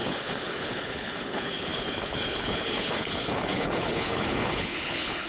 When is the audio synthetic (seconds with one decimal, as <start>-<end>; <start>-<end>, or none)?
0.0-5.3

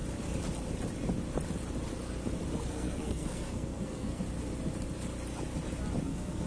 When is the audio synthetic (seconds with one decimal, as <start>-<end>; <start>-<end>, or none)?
2.7-4.2; 6.0-6.5

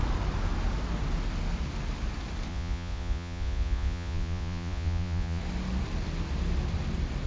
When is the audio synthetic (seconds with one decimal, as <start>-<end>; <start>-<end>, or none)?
2.5-5.4

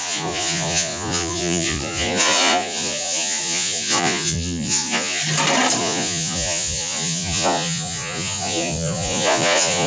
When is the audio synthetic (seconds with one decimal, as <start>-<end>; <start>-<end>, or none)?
0.0-5.2; 5.8-9.9

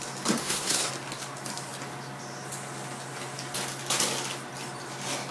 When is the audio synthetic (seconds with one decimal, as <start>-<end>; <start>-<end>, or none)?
0.4-0.9